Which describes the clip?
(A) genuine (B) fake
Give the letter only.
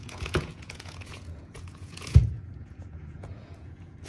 B